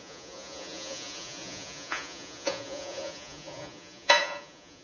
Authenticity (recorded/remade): remade